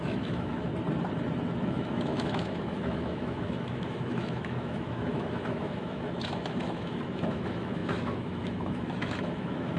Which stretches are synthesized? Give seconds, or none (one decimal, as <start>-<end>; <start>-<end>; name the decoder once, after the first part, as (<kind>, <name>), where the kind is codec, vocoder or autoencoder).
0.0-0.7 (autoencoder, DAC-VAE); 1.6-9.8